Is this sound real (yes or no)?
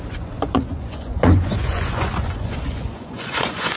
no